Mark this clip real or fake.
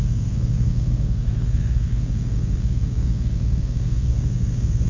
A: fake